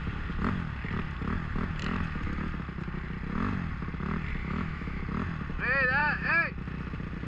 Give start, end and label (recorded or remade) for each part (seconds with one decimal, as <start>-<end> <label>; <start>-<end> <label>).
0.0-4.4 recorded; 4.4-5.0 remade; 5.0-6.0 recorded; 6.0-6.5 remade; 6.5-7.3 recorded